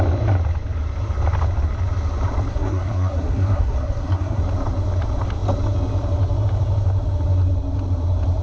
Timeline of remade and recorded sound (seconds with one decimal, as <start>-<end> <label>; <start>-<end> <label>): 0.0-2.5 recorded; 2.5-4.4 remade; 4.4-8.4 recorded